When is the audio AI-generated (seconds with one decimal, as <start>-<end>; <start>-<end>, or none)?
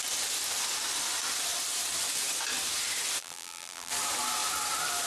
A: 3.2-3.9